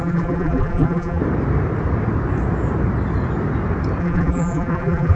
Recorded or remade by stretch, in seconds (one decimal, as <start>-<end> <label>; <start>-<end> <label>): 0.0-1.2 remade; 1.2-4.0 recorded; 4.0-5.2 remade